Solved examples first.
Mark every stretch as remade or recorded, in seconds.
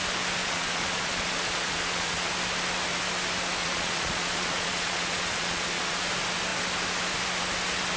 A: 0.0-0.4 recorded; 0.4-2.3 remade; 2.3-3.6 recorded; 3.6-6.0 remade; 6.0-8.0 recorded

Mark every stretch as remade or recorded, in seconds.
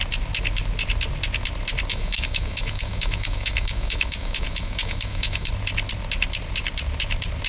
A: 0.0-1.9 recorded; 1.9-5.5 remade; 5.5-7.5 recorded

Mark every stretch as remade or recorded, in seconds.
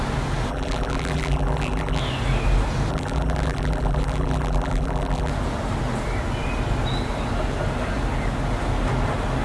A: 0.0-0.5 recorded; 0.5-2.0 remade; 2.0-2.9 recorded; 2.9-5.3 remade; 5.3-9.4 recorded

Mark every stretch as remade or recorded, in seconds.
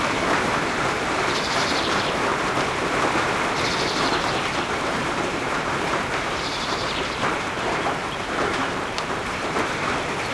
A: 0.0-2.3 remade; 2.3-3.7 recorded; 3.7-10.3 remade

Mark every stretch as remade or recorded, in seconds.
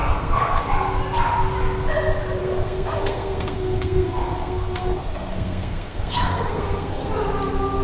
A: 0.0-0.6 remade; 0.6-2.4 recorded; 2.4-7.1 remade; 7.1-7.8 recorded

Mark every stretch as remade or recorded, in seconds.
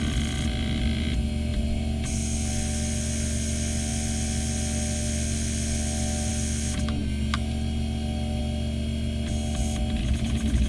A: 0.0-10.0 recorded; 10.0-10.7 remade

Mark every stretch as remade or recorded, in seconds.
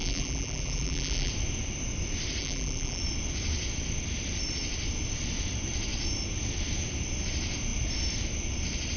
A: 0.0-1.3 remade; 1.3-2.4 recorded; 2.4-3.0 remade; 3.0-9.0 recorded